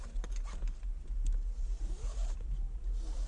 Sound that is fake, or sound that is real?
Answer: real